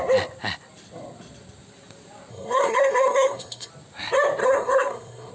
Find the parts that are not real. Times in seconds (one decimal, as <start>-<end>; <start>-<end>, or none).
2.3-3.7; 4.4-5.3